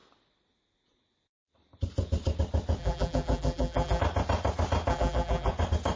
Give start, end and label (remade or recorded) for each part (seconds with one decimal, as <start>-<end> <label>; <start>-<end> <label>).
0.0-2.8 recorded; 2.8-4.0 remade; 4.0-4.9 recorded; 4.9-5.5 remade; 5.5-6.0 recorded